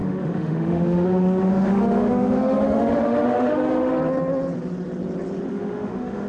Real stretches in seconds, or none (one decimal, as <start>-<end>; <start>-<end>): 3.9-5.5